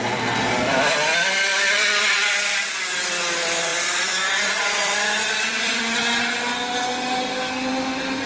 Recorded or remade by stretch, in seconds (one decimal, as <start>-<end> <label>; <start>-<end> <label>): 0.0-1.5 recorded; 1.5-2.5 remade; 2.5-3.7 recorded; 3.7-6.0 remade; 6.0-8.3 recorded